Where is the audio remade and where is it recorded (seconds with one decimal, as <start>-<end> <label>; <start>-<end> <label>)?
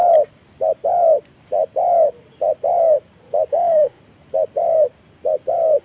0.0-3.5 recorded; 3.5-4.0 remade; 4.0-5.8 recorded